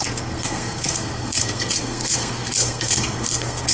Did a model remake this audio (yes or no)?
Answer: yes